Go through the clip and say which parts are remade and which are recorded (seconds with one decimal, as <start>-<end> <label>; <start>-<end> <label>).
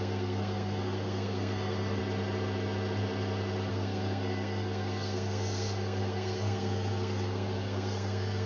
0.0-2.0 remade; 2.0-3.7 recorded; 3.7-8.5 remade